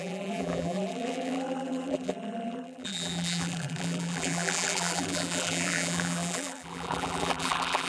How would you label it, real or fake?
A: fake